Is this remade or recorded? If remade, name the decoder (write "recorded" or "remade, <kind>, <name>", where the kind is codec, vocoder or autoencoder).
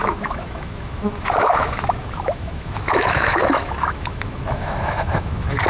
remade, autoencoder, DAC-VAE